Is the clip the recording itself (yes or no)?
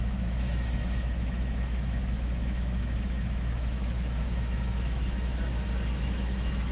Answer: no